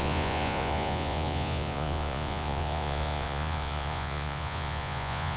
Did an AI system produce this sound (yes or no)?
yes